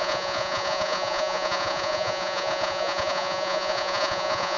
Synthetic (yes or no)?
yes